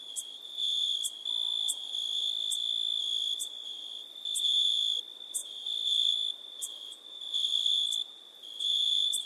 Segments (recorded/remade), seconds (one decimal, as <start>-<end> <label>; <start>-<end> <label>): 0.0-9.3 recorded